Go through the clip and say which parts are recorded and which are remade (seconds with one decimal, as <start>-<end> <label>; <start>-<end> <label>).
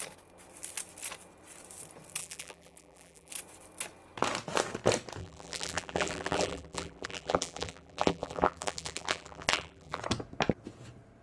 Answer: 0.0-2.2 recorded; 2.2-3.3 remade; 3.3-5.2 recorded; 5.2-10.0 remade; 10.0-11.2 recorded